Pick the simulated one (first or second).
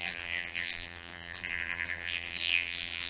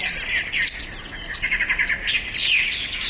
first